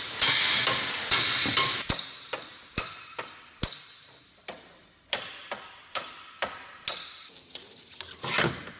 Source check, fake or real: real